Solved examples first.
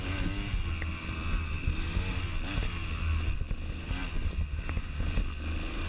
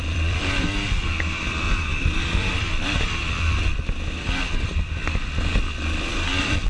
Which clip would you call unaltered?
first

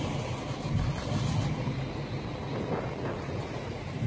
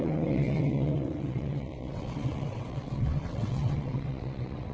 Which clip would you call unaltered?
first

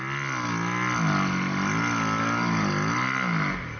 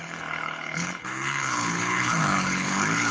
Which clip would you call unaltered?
first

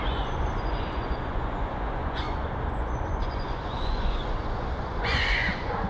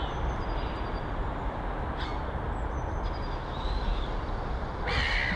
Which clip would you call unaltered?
second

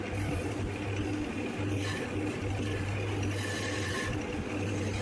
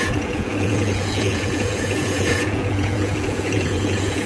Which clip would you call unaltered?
first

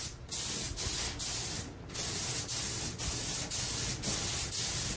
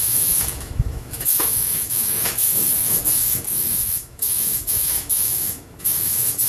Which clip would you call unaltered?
first